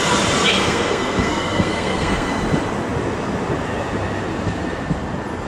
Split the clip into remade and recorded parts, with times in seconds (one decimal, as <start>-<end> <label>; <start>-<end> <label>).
0.0-0.5 recorded; 0.5-2.3 remade; 2.3-5.5 recorded